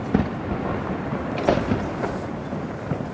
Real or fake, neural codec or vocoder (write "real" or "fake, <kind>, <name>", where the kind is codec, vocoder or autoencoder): real